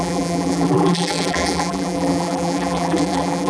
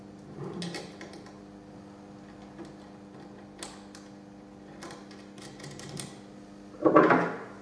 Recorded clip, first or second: second